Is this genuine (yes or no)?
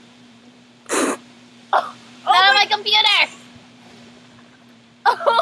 no